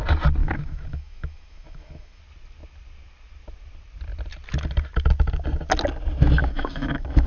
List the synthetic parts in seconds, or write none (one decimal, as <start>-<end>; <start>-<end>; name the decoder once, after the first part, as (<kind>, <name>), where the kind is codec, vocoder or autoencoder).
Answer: 0.4-2.2 (autoencoder, DAC-VAE); 6.4-7.3